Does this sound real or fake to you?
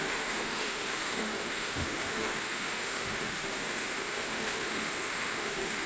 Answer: fake